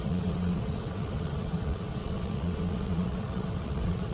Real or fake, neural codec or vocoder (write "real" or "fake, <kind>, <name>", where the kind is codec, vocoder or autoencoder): fake, vocoder, WaveNeXt